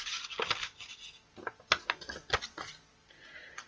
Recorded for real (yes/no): yes